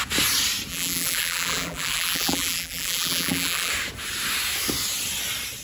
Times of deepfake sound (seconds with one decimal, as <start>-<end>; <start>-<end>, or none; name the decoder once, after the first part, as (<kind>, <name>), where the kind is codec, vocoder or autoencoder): 0.7-3.7 (vocoder, BigVGAN v2)